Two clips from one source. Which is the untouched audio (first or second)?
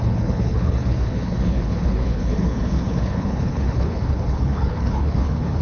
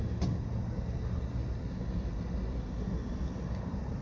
second